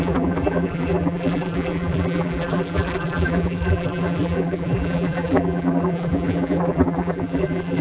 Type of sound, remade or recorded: remade